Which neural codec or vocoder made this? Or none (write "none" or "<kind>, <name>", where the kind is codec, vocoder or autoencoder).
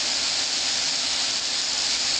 none